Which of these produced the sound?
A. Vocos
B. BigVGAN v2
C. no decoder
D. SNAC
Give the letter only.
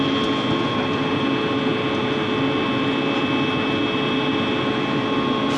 C